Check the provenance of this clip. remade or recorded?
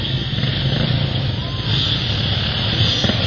recorded